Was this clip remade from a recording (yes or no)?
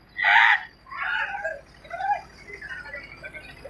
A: no